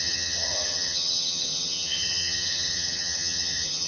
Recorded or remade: remade